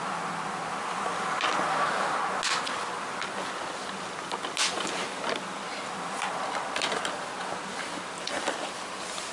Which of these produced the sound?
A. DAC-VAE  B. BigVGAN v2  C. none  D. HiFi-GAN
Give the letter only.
C